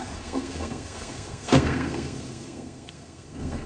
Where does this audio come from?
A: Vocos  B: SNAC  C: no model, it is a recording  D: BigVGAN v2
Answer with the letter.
B